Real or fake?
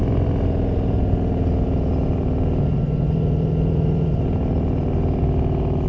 real